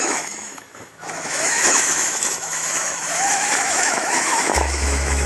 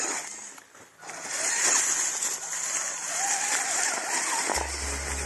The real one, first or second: second